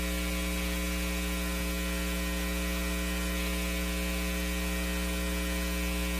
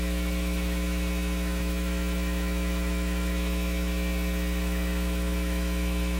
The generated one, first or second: second